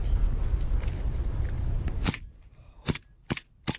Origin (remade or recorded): recorded